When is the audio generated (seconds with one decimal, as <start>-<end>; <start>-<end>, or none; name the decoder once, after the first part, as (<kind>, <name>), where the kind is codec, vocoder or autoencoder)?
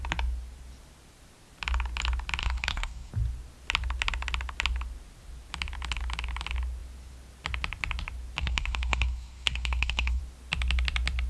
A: 2.4-3.1 (codec, SNAC); 8.4-10.2